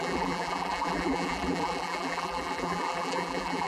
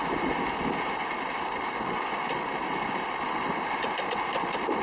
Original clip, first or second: second